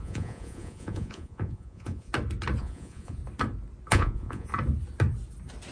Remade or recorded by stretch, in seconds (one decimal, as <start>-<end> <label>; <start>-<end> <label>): 0.0-2.1 remade; 2.1-2.6 recorded; 2.6-3.2 remade; 3.2-3.9 recorded; 3.9-4.5 remade; 4.5-5.7 recorded